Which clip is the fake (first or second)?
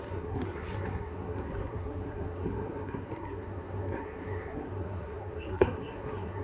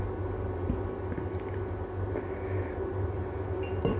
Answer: first